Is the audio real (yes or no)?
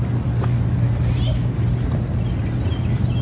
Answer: yes